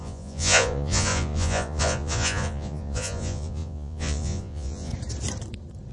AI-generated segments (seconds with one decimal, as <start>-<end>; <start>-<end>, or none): 0.0-4.9